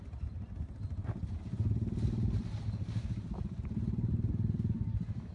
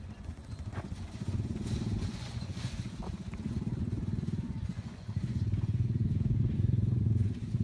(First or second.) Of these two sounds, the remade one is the second